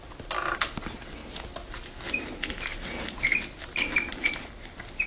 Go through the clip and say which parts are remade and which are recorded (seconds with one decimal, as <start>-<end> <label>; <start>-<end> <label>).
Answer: 0.0-5.1 recorded